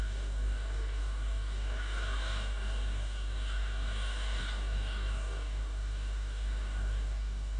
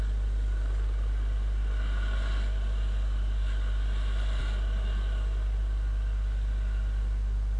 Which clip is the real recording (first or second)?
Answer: second